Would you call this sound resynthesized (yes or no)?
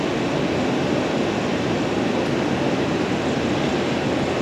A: no